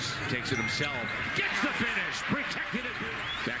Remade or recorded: recorded